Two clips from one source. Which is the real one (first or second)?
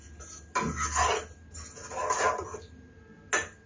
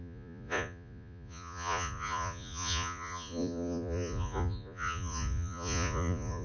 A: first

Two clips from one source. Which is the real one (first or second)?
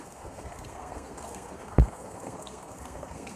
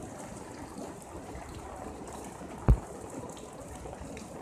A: second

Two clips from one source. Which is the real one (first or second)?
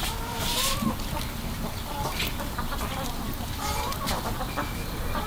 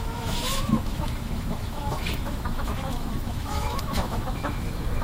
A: first